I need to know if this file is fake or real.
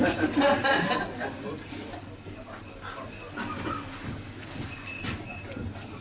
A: real